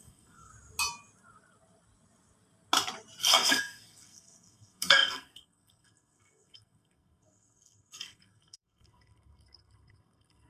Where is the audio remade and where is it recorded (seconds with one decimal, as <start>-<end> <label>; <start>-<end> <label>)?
0.0-0.5 remade; 0.5-3.2 recorded; 3.2-10.5 remade